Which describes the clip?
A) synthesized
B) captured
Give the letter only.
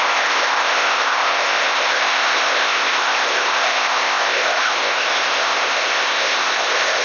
A